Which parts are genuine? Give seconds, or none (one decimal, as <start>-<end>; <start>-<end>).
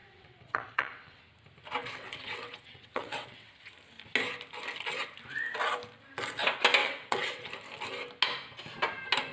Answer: 1.2-1.8; 3.7-6.8; 7.5-9.3